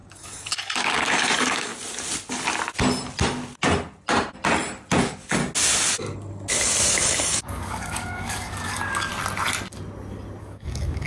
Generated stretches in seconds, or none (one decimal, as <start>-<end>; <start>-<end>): 0.0-1.7; 5.0-5.4; 6.9-9.1; 10.4-11.1